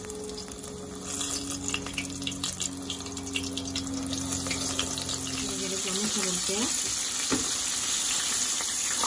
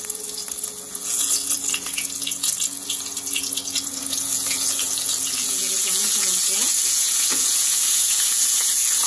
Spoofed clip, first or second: second